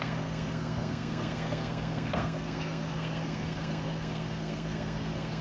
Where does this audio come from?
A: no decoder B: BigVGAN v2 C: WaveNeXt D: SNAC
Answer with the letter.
D